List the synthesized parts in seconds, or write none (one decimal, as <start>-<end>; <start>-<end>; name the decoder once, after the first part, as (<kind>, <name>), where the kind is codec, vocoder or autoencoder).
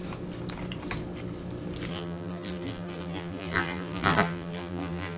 1.9-5.2 (vocoder, BigVGAN v2)